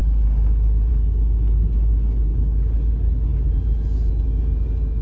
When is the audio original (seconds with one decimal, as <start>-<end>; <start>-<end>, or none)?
0.0-2.3; 2.9-5.0